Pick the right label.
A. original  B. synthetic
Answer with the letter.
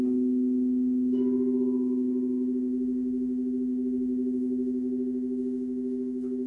B